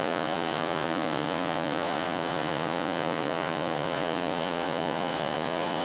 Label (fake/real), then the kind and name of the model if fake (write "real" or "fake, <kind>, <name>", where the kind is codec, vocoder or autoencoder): fake, vocoder, Vocos